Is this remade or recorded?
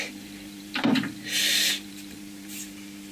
remade